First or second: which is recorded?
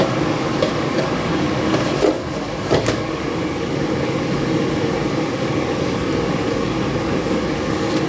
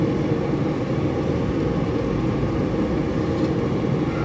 second